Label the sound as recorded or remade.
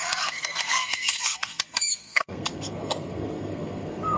remade